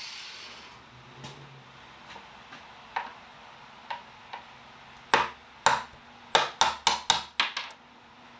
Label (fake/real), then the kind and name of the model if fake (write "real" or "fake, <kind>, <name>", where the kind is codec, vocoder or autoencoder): real